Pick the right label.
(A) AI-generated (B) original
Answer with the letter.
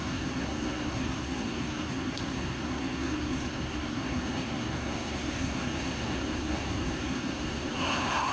A